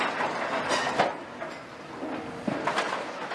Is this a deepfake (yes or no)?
no